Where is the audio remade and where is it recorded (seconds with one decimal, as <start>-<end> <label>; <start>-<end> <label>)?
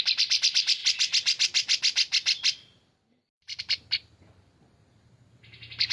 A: 0.0-5.9 recorded